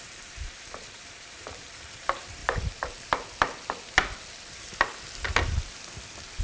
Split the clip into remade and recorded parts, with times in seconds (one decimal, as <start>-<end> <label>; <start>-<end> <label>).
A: 0.0-2.4 remade; 2.4-6.4 recorded